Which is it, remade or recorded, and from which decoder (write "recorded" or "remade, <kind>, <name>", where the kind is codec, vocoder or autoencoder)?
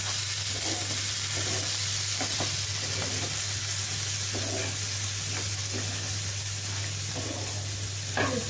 recorded